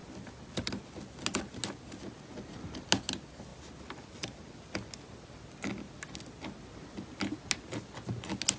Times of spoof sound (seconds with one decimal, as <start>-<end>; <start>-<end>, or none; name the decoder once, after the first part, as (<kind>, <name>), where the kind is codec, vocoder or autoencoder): none